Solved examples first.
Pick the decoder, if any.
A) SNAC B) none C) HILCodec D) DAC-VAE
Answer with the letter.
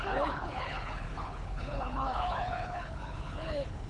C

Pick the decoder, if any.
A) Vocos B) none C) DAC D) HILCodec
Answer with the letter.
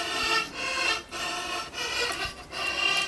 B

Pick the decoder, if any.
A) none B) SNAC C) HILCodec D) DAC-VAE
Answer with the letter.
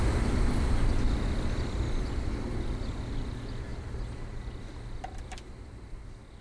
A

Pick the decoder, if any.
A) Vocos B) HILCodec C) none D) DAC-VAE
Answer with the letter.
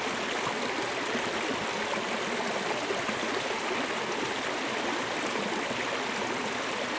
C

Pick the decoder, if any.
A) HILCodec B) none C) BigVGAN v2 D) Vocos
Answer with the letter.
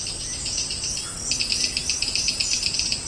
B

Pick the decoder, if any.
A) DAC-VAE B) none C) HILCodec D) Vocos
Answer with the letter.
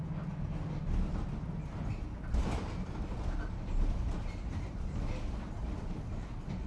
B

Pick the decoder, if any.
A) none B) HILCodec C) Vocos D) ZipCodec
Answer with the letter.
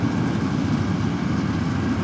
A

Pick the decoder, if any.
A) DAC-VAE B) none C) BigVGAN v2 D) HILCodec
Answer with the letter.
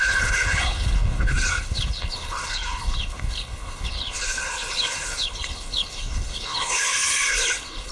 D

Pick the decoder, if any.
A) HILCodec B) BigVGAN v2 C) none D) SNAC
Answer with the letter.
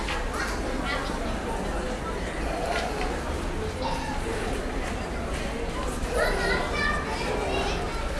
C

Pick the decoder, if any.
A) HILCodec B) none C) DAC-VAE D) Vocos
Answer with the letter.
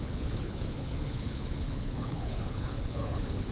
A